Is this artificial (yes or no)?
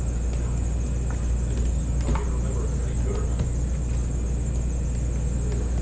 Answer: no